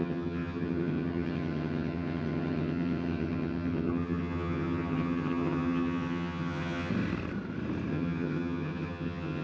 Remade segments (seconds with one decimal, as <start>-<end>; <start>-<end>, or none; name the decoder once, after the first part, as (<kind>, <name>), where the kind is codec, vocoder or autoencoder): 0.0-6.9 (vocoder, HiFi-GAN); 7.9-9.4